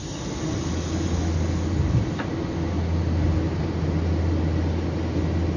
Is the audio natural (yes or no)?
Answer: yes